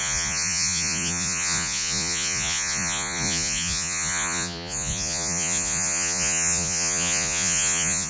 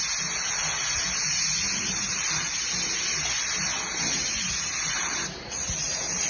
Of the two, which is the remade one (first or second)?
first